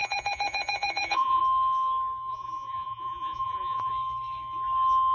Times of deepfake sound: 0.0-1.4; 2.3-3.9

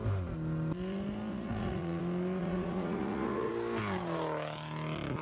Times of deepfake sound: 1.3-2.0; 2.4-3.5

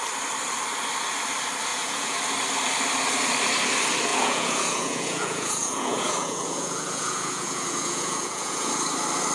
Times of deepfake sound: 1.7-2.2; 4.1-8.7

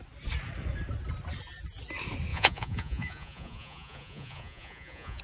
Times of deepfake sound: 2.3-5.2

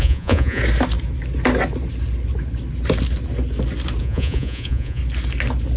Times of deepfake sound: 0.0-0.6; 4.0-5.0

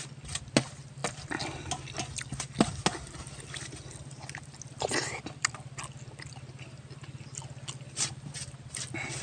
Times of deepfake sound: none